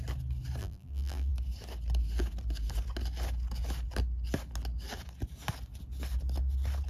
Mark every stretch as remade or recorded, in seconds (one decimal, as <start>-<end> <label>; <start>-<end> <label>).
0.0-0.6 recorded; 0.6-1.3 remade; 1.3-6.9 recorded